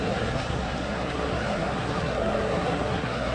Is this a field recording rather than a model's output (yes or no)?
no